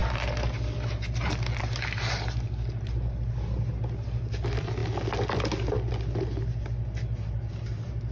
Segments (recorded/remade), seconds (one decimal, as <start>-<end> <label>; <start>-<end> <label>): 0.0-8.1 recorded